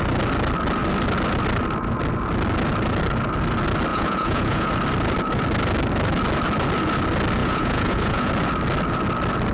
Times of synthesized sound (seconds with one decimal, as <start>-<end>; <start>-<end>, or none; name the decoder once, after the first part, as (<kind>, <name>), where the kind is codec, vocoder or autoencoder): 3.9-4.7 (vocoder, Vocos); 7.4-8.3